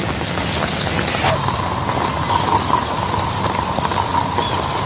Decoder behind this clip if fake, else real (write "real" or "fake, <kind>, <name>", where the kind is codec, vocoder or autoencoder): real